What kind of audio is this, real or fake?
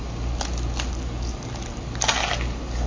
real